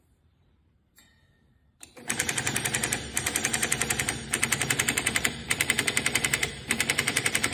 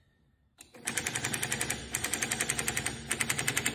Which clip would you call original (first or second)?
second